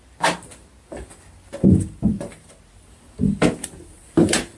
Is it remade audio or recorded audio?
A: recorded